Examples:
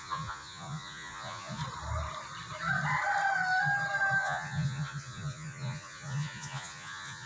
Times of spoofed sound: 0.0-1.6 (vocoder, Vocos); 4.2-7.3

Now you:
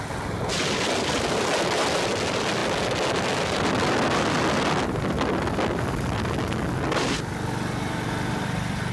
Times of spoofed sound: none

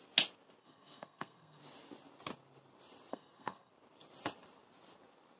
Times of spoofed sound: 0.6-1.6 (codec, SNAC); 3.1-3.7

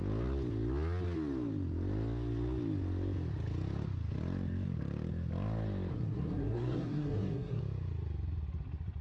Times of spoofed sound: 5.9-7.6 (codec, SNAC)

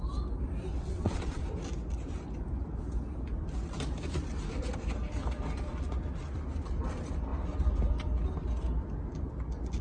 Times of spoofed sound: 0.7-1.4 (vocoder, WaveNeXt)

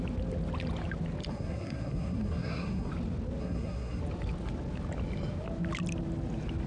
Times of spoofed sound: 1.3-2.9 (codec, SNAC); 3.4-4.0